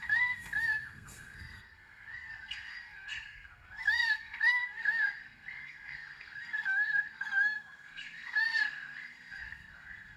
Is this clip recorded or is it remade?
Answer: remade